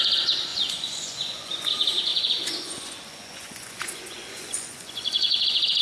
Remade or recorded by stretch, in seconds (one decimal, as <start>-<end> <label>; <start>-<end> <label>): 0.0-0.5 recorded; 0.5-1.7 remade; 1.7-2.1 recorded; 2.1-5.8 remade